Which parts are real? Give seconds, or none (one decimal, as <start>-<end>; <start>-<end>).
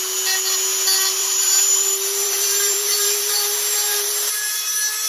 0.0-1.2; 4.3-5.1